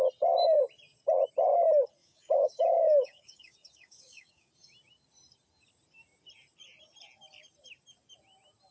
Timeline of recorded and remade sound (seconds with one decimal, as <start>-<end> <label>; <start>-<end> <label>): 0.0-2.0 recorded; 2.0-4.5 remade; 4.5-8.7 recorded